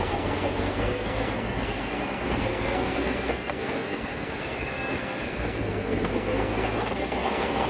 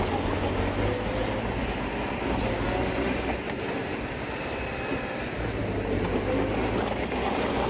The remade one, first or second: first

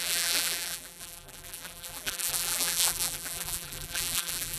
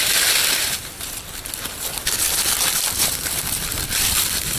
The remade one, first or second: first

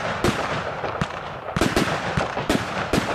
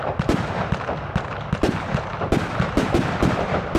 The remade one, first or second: first